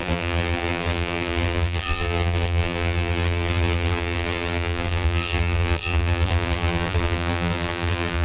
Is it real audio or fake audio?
fake